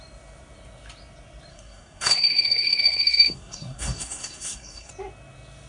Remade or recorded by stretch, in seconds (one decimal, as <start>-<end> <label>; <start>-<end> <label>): 0.0-1.5 recorded; 1.5-4.9 remade; 4.9-5.7 recorded